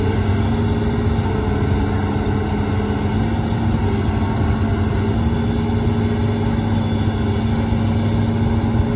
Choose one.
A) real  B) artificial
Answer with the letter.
A